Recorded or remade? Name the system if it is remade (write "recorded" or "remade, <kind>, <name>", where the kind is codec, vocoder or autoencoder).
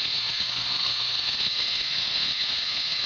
remade, codec, SNAC